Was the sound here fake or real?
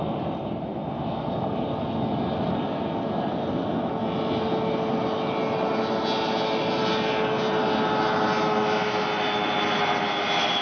real